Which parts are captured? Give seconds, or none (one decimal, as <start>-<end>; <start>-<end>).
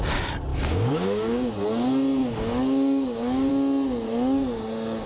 0.0-0.5; 1.5-2.2; 3.5-5.1